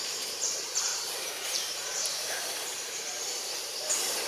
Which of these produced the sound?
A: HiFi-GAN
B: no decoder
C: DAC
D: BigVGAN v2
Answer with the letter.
D